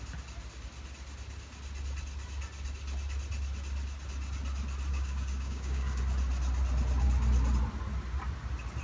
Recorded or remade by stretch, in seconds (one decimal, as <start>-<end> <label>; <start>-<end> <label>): 0.0-4.9 recorded; 4.9-6.0 remade; 6.0-8.8 recorded